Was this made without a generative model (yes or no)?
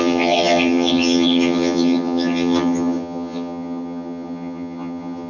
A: no